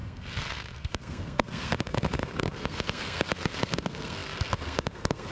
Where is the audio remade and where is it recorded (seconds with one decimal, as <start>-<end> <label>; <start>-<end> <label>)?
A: 0.0-5.3 remade